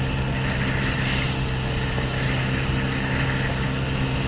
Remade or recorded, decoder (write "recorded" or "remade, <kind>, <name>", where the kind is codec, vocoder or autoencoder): recorded